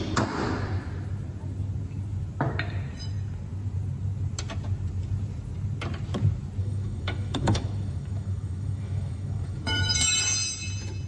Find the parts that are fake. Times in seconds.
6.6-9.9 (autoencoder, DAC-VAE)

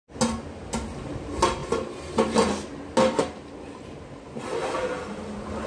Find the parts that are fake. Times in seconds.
none

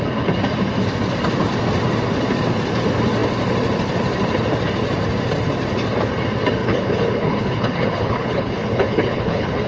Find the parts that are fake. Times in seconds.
6.6-9.7 (codec, HILCodec)

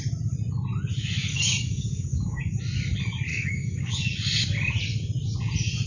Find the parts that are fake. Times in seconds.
1.3-2.6 (codec, DAC); 3.3-3.9

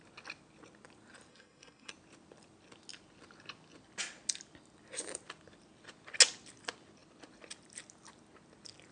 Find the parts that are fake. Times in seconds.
1.3-1.9 (codec, SNAC)

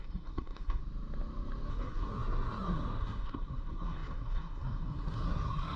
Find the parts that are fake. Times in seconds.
0.0-0.8 (codec, SNAC); 1.7-5.8

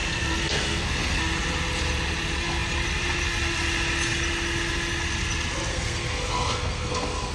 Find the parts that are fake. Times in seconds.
0.0-1.2 (codec, SNAC); 5.7-7.3